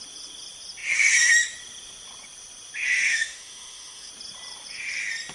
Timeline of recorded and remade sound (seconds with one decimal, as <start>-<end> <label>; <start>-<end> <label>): 0.0-3.1 recorded; 3.1-4.1 remade; 4.1-5.3 recorded